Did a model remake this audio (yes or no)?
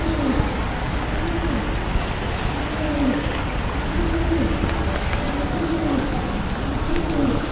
no